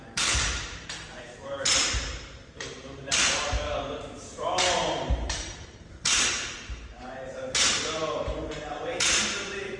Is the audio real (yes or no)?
no